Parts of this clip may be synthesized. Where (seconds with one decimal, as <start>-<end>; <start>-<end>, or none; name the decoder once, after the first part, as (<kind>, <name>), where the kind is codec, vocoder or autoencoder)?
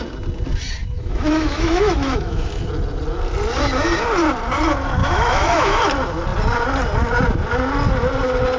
0.8-2.6 (autoencoder, DAC-VAE); 5.0-5.8